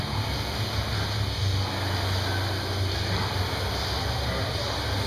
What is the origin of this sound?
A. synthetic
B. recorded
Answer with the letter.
B